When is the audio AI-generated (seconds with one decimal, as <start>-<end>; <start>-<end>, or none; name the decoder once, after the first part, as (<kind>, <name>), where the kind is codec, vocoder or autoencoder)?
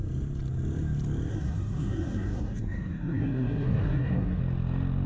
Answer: 1.3-4.4 (codec, SNAC)